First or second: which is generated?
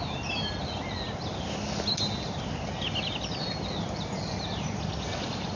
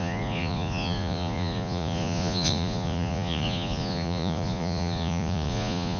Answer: second